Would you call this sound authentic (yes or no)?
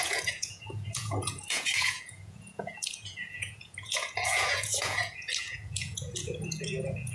no